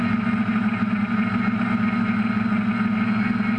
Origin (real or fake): real